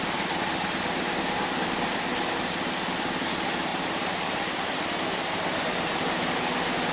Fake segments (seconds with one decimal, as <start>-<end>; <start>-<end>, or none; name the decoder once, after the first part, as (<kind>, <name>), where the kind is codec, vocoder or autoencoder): none